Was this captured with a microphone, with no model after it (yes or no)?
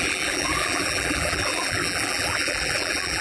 no